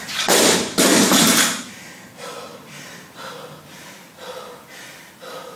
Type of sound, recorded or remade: recorded